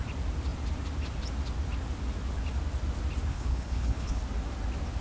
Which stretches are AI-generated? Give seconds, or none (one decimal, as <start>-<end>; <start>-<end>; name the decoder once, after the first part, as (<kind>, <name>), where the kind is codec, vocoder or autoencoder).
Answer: 3.3-4.2 (codec, HILCodec)